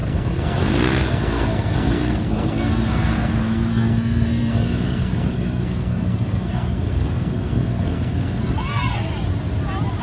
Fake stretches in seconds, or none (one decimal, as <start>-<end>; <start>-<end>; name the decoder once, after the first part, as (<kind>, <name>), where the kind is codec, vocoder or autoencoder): 0.0-9.1 (codec, SNAC)